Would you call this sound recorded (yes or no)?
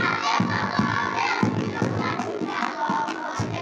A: no